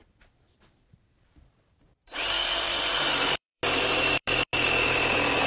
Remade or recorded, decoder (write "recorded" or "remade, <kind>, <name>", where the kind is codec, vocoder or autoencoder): remade, vocoder, BigVGAN v2